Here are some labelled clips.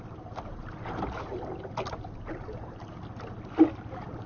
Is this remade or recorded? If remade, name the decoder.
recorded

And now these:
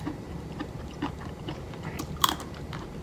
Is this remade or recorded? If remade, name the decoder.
remade, vocoder, BigVGAN v2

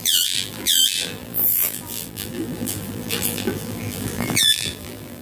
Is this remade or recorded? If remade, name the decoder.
remade, vocoder, BigVGAN v2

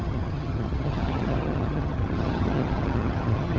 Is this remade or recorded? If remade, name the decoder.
remade, vocoder, HiFi-GAN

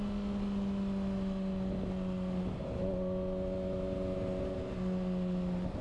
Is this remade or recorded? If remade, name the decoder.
recorded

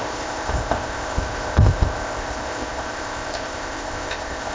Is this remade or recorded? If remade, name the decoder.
remade, codec, ZipCodec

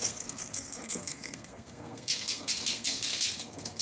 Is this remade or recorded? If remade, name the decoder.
remade, codec, SNAC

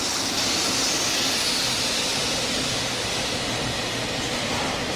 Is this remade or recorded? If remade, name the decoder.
recorded